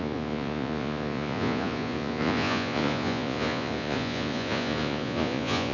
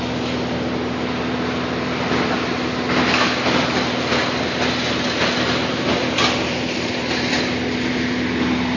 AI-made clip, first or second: first